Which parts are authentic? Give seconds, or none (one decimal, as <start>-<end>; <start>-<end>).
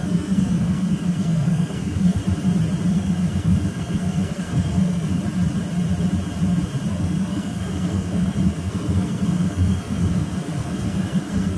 2.2-2.9; 5.2-6.9